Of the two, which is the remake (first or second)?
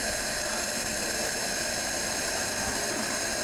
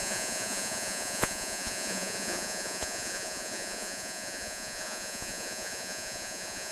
second